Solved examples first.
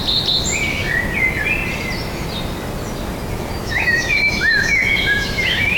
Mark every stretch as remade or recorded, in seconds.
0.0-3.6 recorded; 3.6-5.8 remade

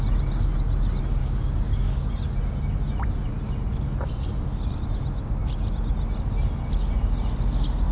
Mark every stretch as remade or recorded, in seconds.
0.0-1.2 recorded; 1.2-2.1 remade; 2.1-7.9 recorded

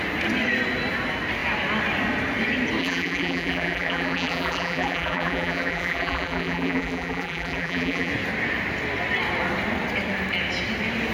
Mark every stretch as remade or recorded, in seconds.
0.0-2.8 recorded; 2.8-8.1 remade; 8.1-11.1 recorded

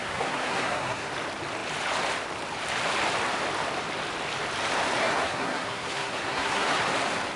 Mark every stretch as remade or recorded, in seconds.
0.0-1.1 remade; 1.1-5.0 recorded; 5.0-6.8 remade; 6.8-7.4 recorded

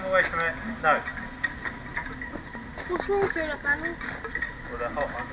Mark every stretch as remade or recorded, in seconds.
0.0-5.3 recorded

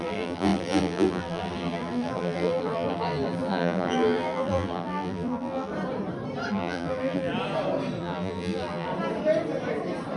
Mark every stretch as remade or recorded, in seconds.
0.0-5.7 remade; 5.7-6.5 recorded; 6.5-7.3 remade; 7.3-8.0 recorded; 8.0-8.9 remade; 8.9-10.2 recorded